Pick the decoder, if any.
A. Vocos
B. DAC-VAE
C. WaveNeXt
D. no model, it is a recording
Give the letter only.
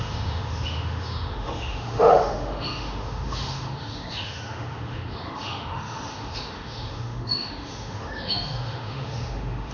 B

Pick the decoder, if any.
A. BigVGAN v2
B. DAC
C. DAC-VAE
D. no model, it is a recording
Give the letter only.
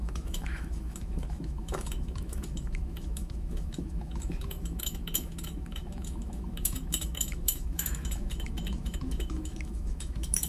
C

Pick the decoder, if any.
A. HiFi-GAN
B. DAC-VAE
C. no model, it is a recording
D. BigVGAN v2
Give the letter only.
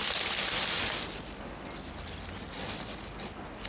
C